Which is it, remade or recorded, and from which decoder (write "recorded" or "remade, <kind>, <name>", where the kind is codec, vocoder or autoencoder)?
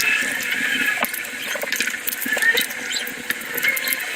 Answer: recorded